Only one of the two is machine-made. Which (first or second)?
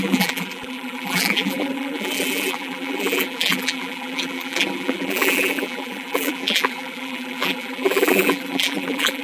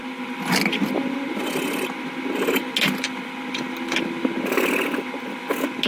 first